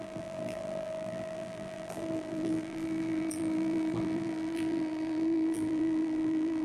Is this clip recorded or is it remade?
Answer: remade